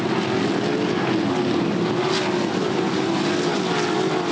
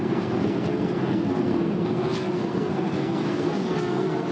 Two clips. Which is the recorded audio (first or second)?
first